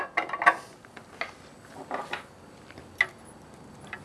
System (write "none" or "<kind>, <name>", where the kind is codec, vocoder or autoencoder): none